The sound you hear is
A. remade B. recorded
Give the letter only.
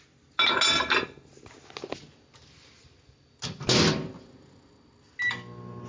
B